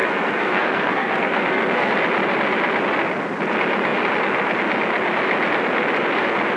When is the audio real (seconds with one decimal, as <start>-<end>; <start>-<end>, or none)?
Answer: 1.9-6.6